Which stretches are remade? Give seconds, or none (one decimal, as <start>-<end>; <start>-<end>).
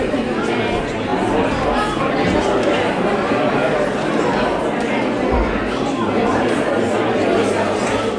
none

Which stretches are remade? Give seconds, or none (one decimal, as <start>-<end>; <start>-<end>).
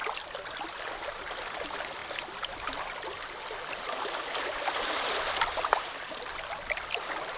0.0-7.4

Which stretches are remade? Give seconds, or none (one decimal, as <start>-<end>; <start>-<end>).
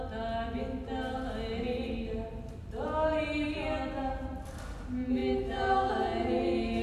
none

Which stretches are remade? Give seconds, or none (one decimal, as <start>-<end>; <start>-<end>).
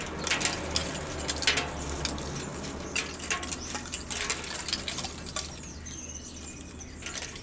none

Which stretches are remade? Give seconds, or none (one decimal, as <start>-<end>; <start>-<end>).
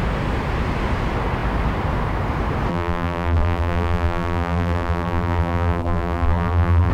2.7-6.9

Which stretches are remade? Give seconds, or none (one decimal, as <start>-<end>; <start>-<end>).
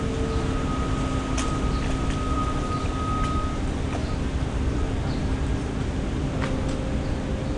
4.0-4.9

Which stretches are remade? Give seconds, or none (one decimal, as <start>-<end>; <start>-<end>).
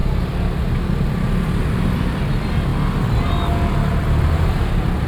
2.2-2.7; 4.0-5.1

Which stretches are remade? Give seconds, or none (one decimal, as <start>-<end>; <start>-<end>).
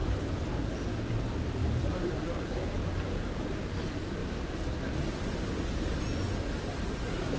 0.0-0.7; 1.6-2.2; 2.8-3.5; 4.2-4.9